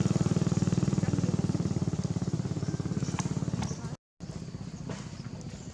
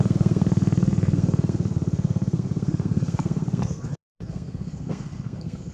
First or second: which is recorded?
first